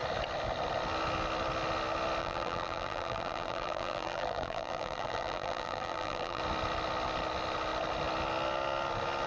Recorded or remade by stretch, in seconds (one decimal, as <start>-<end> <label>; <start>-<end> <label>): 0.0-2.2 recorded; 2.2-6.4 remade; 6.4-9.3 recorded